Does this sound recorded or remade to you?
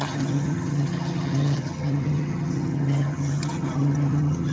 remade